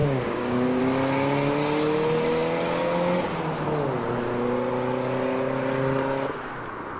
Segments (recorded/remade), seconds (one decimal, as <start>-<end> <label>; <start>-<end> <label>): 0.0-0.8 remade; 0.8-7.0 recorded